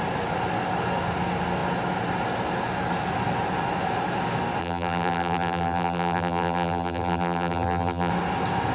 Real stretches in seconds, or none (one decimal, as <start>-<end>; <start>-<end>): 0.0-4.6; 8.1-8.7